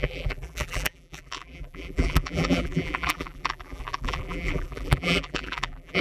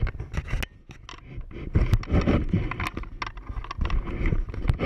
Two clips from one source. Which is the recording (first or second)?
second